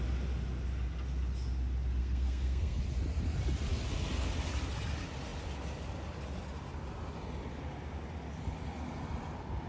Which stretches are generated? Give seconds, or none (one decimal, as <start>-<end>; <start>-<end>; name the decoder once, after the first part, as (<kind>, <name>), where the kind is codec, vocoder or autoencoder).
2.0-2.8 (codec, SNAC)

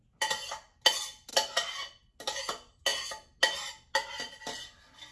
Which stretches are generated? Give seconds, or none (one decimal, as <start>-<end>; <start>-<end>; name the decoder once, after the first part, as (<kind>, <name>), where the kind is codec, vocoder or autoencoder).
none